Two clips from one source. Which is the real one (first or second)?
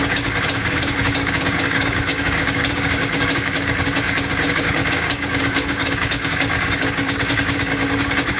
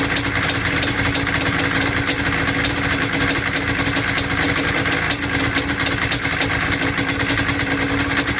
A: second